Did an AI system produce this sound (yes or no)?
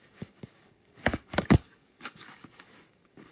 yes